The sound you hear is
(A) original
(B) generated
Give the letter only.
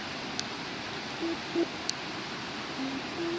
A